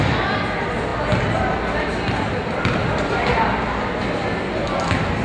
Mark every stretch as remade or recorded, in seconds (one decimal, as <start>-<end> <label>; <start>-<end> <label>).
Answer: 0.0-5.2 recorded